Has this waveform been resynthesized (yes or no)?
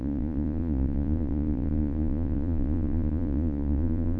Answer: yes